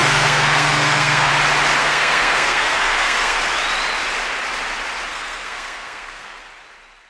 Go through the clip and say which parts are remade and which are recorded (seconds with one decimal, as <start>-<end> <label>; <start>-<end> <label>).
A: 0.0-1.3 remade; 1.3-1.8 recorded; 1.8-3.4 remade; 3.4-5.1 recorded; 5.1-6.4 remade; 6.4-7.1 recorded